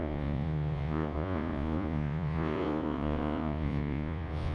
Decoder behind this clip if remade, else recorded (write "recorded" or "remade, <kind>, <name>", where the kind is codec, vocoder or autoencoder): remade, vocoder, Vocos